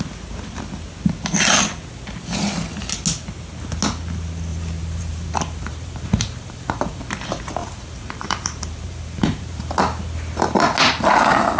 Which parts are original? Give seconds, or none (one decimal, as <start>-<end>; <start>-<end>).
0.0-4.5; 7.0-7.6; 9.7-11.6